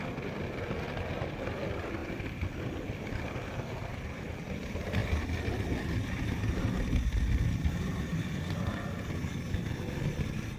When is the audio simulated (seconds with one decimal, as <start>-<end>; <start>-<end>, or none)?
2.0-4.3; 5.0-6.6